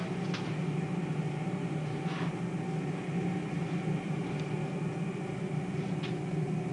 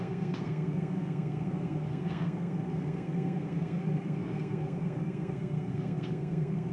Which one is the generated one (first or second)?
second